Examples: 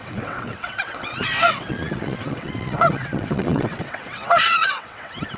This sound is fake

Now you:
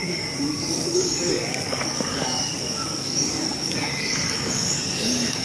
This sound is fake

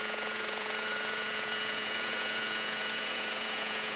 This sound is fake